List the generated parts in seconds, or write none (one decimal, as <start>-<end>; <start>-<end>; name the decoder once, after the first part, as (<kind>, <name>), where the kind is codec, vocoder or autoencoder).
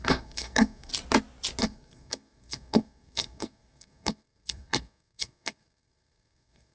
0.0-0.9 (codec, SNAC); 1.6-6.7